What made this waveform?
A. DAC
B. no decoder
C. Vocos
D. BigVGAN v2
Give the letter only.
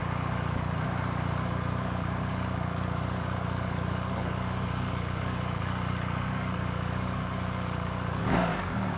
A